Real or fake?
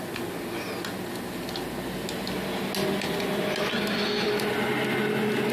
real